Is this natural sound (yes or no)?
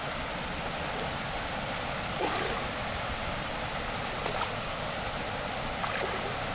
yes